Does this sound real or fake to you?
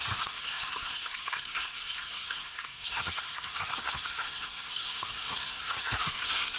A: fake